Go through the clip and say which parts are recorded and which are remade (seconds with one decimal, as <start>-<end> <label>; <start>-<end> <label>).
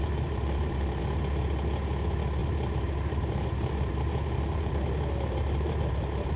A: 0.0-1.0 remade; 1.0-2.4 recorded; 2.4-6.4 remade